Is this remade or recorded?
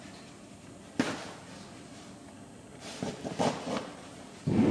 recorded